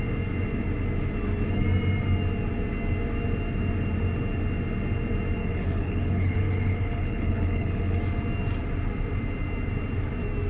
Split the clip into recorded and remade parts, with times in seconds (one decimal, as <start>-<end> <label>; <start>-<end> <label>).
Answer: 0.0-5.4 recorded; 5.4-8.0 remade; 8.0-10.5 recorded